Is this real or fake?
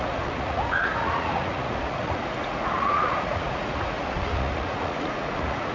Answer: fake